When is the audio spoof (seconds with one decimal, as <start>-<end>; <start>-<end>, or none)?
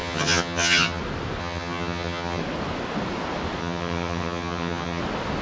0.0-1.0; 1.4-2.4; 3.6-5.0